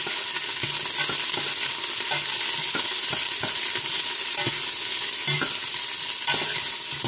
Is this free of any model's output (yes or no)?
yes